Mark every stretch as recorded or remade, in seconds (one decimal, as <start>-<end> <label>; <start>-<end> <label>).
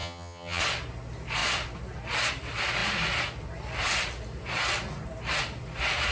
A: 0.0-0.6 remade; 0.6-6.1 recorded